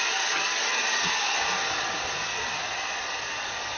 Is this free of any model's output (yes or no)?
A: yes